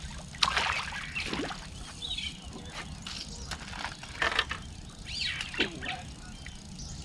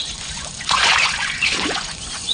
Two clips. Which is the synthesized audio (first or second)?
second